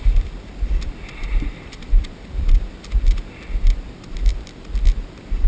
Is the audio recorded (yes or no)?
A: no